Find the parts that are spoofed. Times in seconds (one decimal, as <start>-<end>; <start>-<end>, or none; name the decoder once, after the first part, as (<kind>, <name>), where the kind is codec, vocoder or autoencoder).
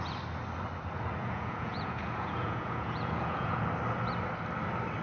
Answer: 1.2-3.6 (vocoder, Vocos)